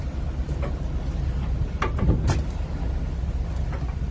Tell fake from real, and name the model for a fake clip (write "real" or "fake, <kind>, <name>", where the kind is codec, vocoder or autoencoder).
real